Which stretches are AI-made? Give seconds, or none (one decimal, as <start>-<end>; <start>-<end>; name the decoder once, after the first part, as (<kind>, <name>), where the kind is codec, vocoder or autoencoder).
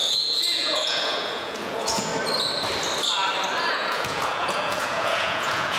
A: 0.0-2.1 (vocoder, Vocos); 3.7-5.8